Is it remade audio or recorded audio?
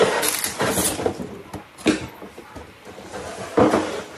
recorded